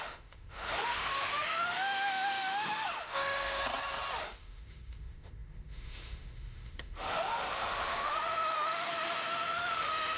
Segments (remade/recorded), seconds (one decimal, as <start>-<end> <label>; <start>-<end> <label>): 0.0-3.6 remade; 3.6-4.2 recorded; 4.2-10.2 remade